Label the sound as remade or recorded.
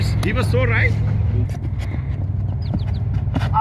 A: recorded